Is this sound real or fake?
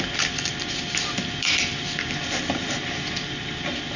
real